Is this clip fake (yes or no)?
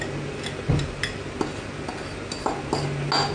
no